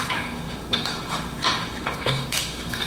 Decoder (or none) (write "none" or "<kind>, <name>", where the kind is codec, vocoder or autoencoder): autoencoder, DAC-VAE